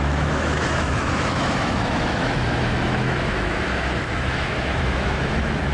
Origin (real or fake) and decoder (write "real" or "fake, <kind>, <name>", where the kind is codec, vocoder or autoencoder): fake, autoencoder, DAC-VAE